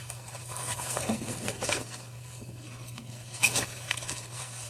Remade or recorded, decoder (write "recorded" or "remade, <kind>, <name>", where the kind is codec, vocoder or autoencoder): remade, codec, SNAC